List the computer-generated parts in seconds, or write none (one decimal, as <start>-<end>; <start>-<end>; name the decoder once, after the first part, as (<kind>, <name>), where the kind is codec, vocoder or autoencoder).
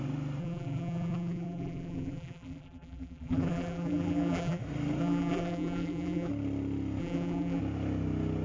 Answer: 0.4-4.6 (vocoder, BigVGAN v2); 5.0-6.3; 7.0-7.6